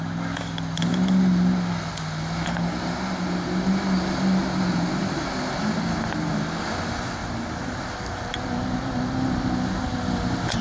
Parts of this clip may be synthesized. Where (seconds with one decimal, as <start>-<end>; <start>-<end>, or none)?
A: 7.2-7.9